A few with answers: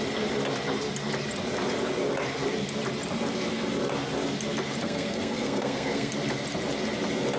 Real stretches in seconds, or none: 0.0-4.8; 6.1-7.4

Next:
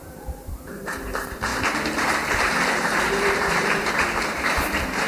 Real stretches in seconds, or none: none

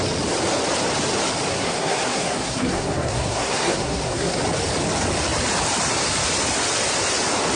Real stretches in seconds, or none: 0.0-1.5; 4.4-7.6

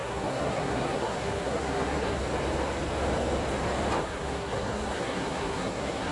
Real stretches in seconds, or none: 2.2-4.0

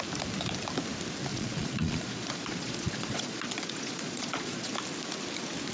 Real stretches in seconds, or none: 0.0-1.3; 4.7-5.7

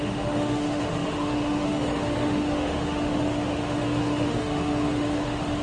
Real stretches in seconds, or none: none

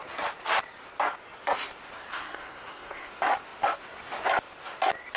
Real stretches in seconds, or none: 0.0-2.1; 3.1-5.2

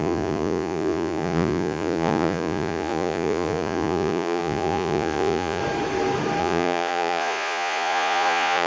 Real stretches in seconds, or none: 5.6-6.4